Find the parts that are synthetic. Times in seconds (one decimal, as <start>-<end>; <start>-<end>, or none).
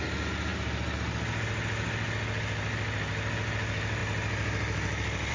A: none